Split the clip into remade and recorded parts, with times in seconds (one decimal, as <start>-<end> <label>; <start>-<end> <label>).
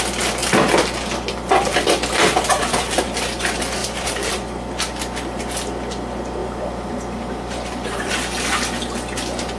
0.0-3.8 recorded; 3.8-4.3 remade; 4.3-6.4 recorded; 6.4-8.1 remade; 8.1-9.6 recorded